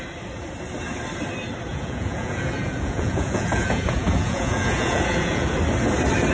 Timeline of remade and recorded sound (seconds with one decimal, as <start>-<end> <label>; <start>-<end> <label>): 0.0-1.7 recorded; 1.7-5.5 remade; 5.5-6.3 recorded